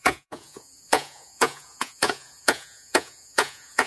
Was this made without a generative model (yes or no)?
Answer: no